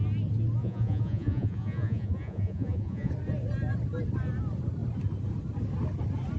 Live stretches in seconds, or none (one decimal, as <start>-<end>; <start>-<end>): 0.0-0.6; 3.1-6.4